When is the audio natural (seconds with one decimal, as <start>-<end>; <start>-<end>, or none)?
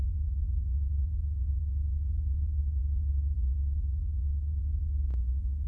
none